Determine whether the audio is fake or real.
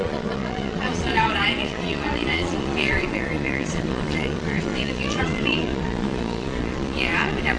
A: fake